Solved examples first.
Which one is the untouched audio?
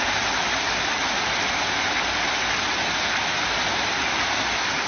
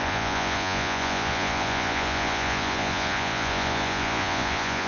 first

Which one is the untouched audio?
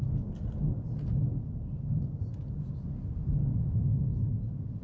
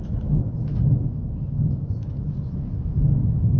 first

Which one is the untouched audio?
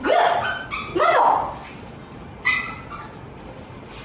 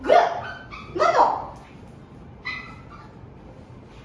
second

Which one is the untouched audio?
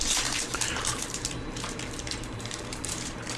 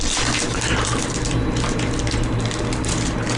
second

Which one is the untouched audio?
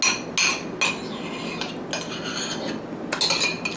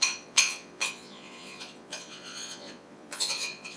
first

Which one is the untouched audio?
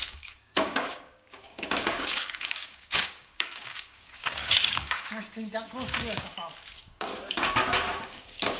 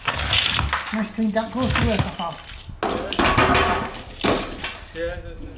second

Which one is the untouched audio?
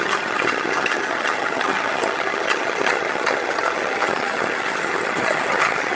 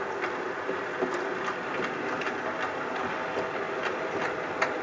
second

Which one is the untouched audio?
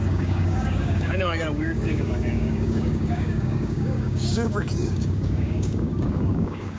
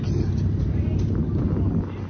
second